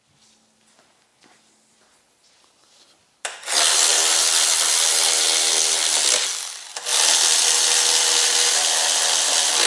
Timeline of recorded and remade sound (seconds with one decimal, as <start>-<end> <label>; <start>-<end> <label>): 0.0-9.7 recorded